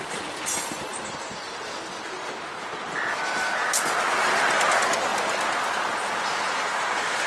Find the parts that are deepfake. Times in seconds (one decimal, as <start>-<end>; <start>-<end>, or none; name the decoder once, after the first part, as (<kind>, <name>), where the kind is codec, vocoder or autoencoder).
3.7-4.3 (vocoder, BigVGAN v2); 5.1-5.7